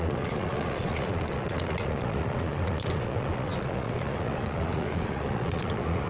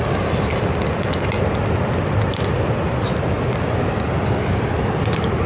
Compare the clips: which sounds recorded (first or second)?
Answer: second